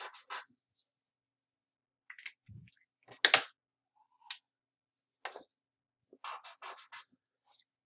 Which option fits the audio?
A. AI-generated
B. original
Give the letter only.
B